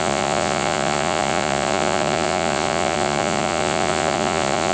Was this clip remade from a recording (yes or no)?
yes